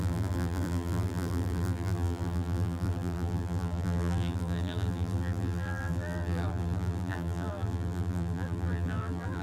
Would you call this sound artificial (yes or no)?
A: yes